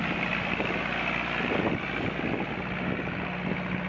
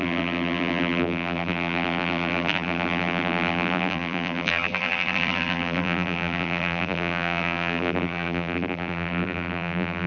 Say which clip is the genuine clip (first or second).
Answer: first